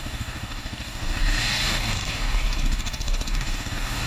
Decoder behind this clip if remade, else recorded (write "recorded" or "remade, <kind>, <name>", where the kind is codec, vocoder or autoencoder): remade, codec, DAC